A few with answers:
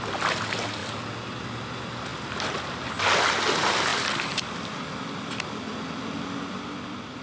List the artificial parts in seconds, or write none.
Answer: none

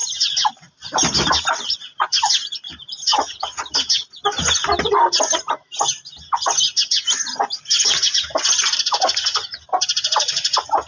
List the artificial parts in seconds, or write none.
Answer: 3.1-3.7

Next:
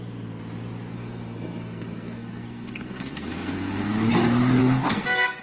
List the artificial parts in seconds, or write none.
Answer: 0.9-4.1; 4.6-5.4

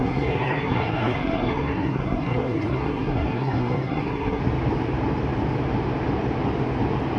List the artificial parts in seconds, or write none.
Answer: 0.0-4.4

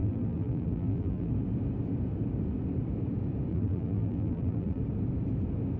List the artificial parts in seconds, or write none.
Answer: 0.0-1.3; 3.5-4.8